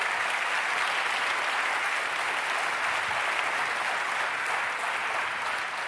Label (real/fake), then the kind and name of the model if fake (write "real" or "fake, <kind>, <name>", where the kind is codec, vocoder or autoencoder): real